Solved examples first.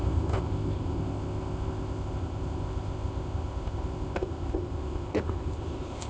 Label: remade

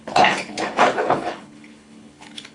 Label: remade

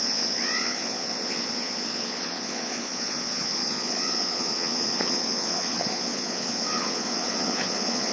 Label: remade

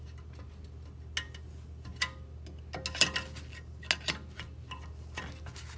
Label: recorded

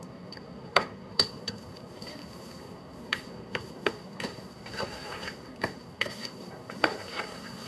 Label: remade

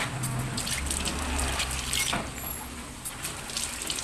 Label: recorded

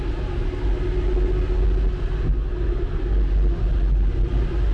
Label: recorded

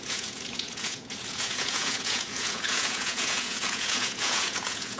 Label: remade